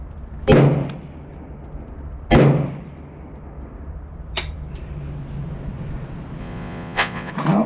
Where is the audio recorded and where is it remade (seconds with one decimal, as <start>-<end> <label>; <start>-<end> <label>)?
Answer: 0.0-6.4 recorded; 6.4-7.3 remade; 7.3-7.7 recorded

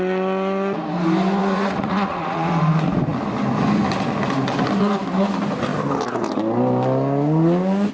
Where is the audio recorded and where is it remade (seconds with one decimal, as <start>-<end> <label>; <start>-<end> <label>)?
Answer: 0.0-1.4 recorded; 1.4-2.5 remade; 2.5-7.9 recorded

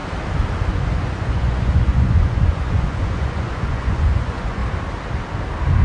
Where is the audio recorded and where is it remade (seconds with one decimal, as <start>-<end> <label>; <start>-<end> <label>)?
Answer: 0.0-0.7 recorded; 0.7-4.6 remade; 4.6-5.8 recorded

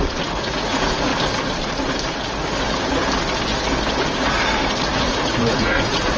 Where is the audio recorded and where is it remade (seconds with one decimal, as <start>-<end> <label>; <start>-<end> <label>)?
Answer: 0.0-1.1 remade; 1.1-4.8 recorded; 4.8-6.2 remade